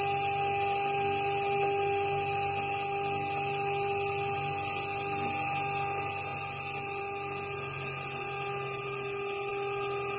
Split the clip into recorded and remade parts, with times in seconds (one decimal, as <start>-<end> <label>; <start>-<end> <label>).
0.0-10.2 recorded